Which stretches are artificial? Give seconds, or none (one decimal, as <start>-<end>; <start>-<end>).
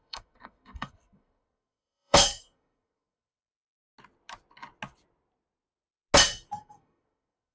0.0-3.5; 6.6-7.5